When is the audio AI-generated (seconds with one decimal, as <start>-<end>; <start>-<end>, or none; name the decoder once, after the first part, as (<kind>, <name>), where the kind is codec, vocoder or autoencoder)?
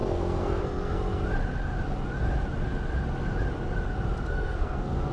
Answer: 0.0-1.2 (codec, SNAC); 4.3-5.1